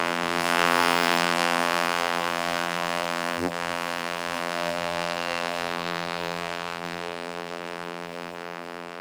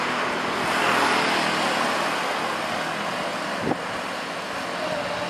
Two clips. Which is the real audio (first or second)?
second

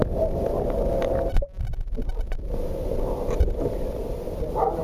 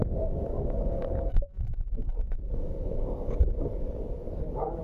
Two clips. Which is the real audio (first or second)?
first